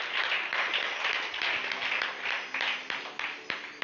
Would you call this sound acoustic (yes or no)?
no